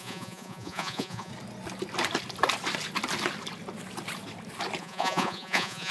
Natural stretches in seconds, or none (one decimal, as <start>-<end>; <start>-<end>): 1.3-4.8